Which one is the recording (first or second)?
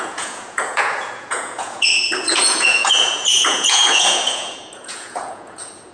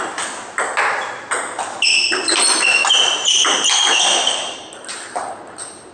second